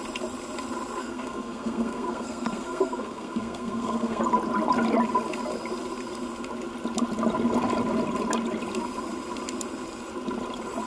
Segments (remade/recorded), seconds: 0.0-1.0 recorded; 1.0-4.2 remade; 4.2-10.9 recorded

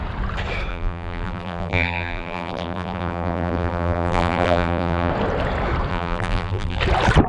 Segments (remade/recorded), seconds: 0.0-0.7 recorded; 0.7-5.1 remade; 5.1-5.9 recorded; 5.9-6.8 remade; 6.8-7.3 recorded

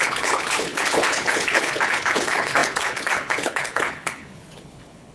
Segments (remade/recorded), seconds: 0.0-5.1 remade